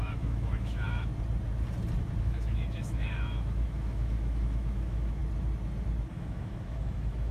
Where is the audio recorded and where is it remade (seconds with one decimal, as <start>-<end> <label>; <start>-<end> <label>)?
0.0-1.1 remade; 1.1-2.2 recorded; 2.2-5.2 remade; 5.2-6.1 recorded; 6.1-7.3 remade